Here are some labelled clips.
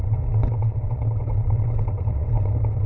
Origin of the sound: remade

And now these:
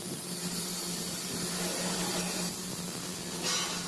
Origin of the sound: recorded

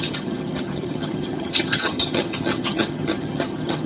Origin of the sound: remade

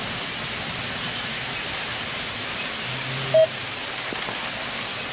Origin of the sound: recorded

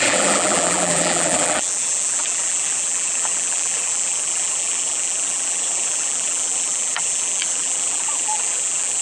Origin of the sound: remade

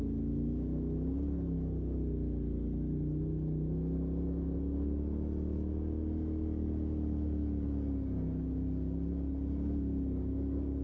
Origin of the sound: recorded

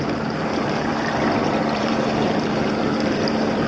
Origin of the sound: remade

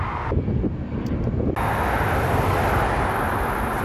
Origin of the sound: recorded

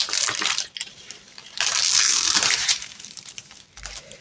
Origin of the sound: remade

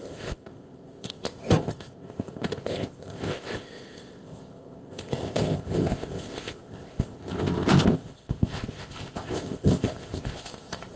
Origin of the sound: remade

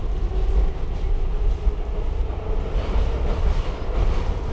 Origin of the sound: recorded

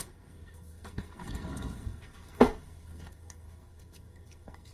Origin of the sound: remade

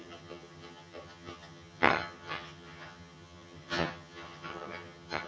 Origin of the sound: remade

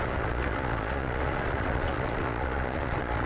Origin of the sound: remade